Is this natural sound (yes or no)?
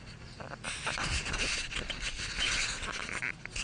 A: yes